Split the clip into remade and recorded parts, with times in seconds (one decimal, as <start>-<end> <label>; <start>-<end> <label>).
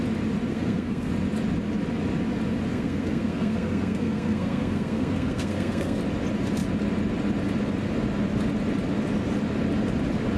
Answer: 0.0-0.5 recorded; 0.5-1.1 remade; 1.1-2.7 recorded; 2.7-6.0 remade; 6.0-10.4 recorded